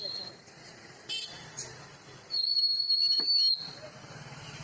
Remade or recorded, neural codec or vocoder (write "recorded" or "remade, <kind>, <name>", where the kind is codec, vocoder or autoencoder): recorded